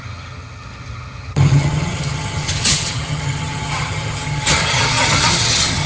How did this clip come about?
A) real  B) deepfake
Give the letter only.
B